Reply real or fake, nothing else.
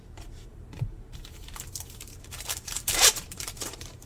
fake